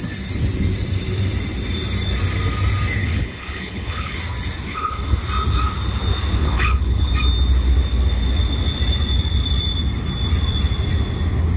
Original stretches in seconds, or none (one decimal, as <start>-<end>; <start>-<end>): 0.0-3.0; 4.2-4.7; 5.2-6.4; 7.1-11.6